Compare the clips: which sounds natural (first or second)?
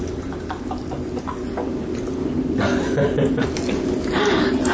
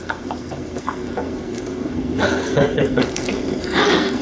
first